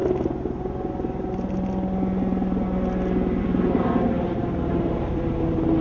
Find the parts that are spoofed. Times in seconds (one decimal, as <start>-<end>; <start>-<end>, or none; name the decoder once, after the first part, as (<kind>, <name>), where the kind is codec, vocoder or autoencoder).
none